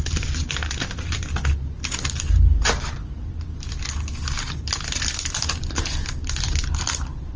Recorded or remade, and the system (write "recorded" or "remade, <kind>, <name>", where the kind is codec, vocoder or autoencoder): recorded